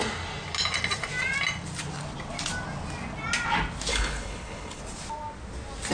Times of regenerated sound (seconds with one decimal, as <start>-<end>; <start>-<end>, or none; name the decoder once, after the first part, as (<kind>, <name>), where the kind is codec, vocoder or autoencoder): 3.9-4.8 (codec, HILCodec)